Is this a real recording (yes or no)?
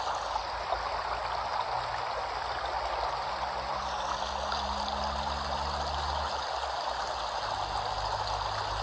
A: yes